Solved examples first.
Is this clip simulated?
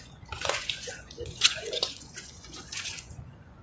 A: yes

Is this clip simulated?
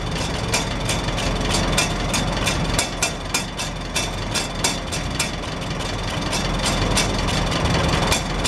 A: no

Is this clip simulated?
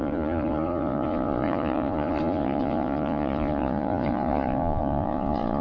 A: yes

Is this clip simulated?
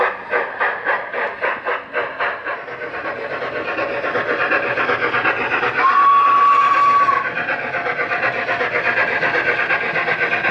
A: no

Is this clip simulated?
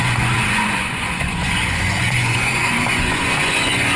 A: yes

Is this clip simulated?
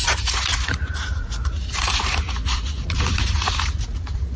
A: yes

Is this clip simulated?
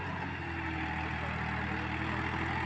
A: no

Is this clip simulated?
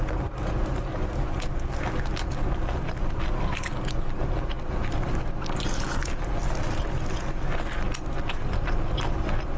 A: no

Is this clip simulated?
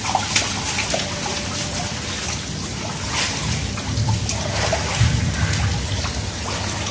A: no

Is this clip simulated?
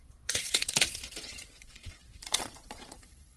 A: yes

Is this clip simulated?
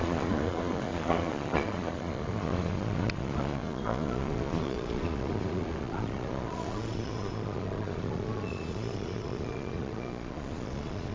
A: yes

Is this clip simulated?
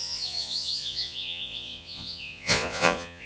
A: yes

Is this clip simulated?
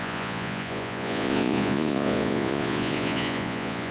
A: yes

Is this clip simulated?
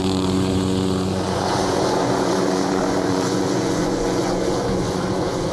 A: yes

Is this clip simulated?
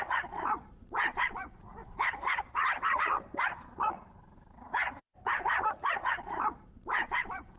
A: yes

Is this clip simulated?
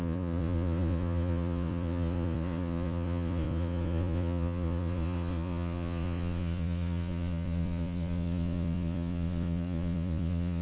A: yes